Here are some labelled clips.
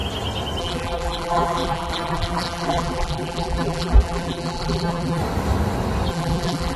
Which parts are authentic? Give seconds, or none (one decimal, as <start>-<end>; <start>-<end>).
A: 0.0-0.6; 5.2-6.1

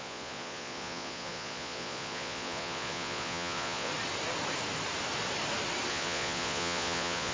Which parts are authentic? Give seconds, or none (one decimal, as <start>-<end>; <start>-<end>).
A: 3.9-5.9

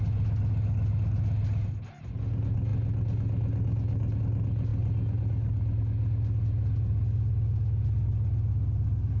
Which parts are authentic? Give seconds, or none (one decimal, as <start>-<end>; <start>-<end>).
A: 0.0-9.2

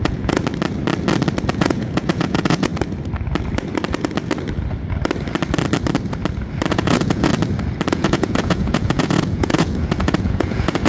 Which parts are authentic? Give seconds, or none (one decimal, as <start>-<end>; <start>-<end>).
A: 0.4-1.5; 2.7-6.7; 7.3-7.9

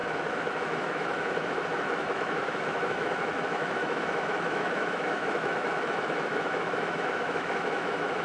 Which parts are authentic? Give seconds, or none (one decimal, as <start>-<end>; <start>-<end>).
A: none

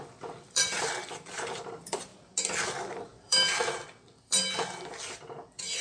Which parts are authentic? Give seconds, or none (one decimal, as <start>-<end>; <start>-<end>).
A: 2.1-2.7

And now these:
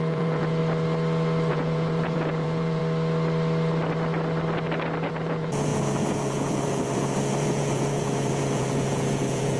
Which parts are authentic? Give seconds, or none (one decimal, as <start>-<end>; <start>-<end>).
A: 0.6-1.5; 2.8-5.1

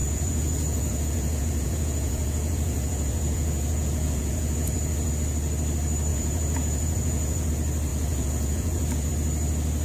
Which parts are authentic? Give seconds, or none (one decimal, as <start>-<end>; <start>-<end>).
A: 5.1-6.1; 7.5-7.9; 9.1-9.8